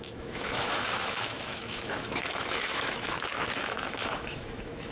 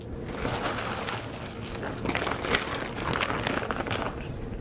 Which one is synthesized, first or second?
first